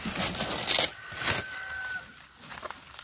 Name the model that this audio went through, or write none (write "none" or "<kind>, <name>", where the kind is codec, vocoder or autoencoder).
none